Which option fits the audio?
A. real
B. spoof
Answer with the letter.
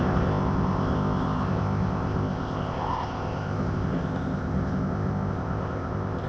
B